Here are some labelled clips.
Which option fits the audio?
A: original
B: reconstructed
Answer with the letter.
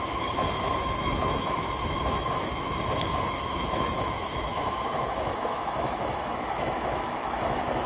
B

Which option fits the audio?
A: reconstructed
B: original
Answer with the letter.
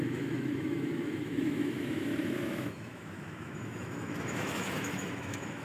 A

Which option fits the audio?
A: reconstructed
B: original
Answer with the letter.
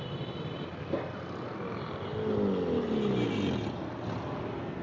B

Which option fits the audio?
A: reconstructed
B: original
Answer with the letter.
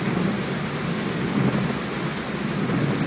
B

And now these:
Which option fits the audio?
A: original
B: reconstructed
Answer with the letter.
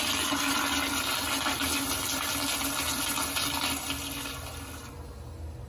A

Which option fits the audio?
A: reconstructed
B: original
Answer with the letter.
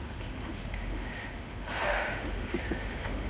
A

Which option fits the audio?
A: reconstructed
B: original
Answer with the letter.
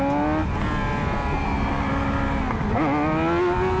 B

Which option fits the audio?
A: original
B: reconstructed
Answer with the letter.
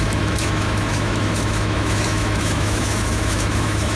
B